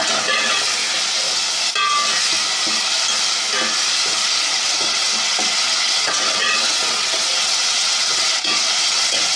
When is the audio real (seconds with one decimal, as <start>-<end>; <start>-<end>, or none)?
0.8-4.4